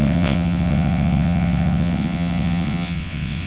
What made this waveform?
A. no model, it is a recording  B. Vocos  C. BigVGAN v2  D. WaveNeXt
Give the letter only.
D